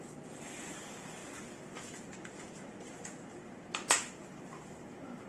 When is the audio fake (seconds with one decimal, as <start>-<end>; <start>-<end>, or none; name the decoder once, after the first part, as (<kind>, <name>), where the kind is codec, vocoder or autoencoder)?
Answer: none